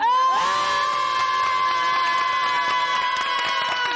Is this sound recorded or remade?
recorded